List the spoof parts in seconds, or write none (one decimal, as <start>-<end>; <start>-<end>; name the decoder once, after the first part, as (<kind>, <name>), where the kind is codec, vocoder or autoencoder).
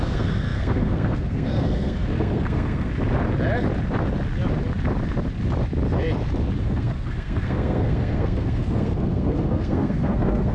0.0-2.9 (codec, SNAC); 6.6-10.5